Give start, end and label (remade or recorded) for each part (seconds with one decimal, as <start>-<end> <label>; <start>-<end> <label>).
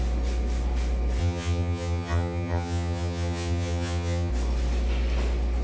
0.0-1.2 recorded; 1.2-4.3 remade; 4.3-5.6 recorded